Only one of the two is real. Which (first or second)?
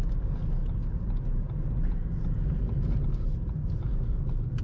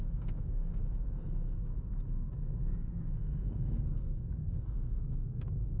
first